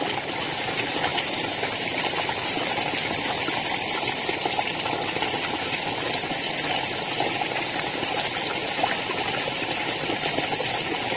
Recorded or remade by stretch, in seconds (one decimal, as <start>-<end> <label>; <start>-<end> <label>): 0.0-8.4 recorded; 8.4-11.2 remade